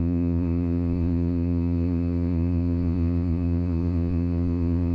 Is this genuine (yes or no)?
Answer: no